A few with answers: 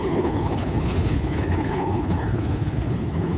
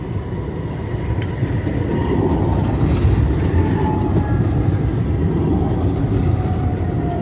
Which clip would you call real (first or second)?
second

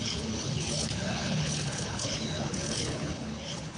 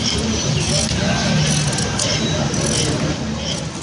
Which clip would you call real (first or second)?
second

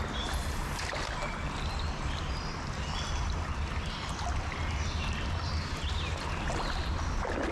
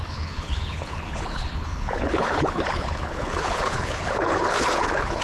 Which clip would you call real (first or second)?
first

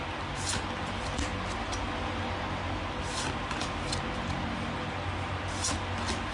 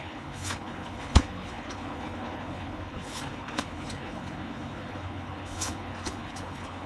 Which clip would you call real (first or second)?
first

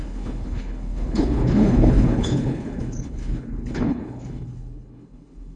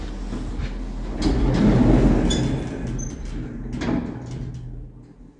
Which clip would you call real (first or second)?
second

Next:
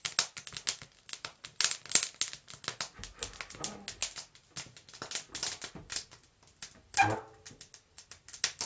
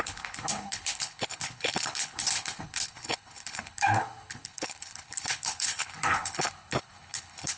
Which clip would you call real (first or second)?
first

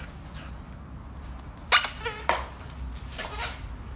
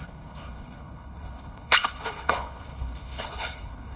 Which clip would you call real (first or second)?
first